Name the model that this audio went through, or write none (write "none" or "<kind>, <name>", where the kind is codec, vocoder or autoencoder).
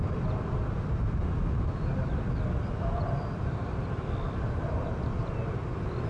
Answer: vocoder, BigVGAN v2